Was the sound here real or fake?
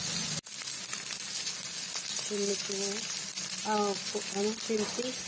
real